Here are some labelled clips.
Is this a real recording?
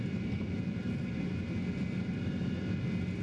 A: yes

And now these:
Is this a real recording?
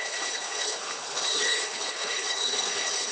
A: no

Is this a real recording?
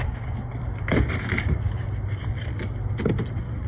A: yes